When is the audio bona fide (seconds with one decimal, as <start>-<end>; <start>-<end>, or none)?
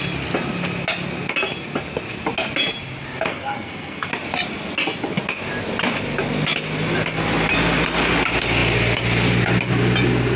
0.0-3.3; 4.1-10.4